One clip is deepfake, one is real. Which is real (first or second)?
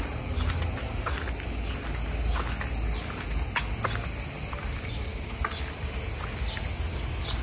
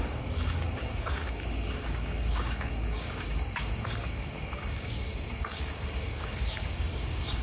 first